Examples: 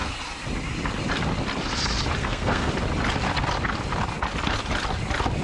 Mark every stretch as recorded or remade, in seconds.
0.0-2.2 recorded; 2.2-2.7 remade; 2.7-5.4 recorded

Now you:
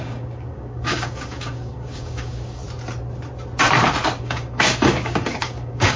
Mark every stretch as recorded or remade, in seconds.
0.0-2.6 remade; 2.6-4.2 recorded; 4.2-6.0 remade

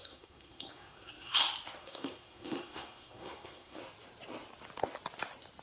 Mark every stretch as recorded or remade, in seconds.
0.0-1.4 remade; 1.4-1.8 recorded; 1.8-3.8 remade; 3.8-5.6 recorded

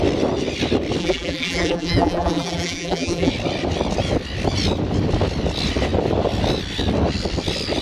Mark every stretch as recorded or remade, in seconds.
0.0-1.0 recorded; 1.0-3.3 remade; 3.3-7.8 recorded

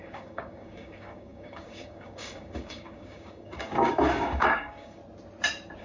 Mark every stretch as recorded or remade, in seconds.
0.0-5.0 remade; 5.0-5.8 recorded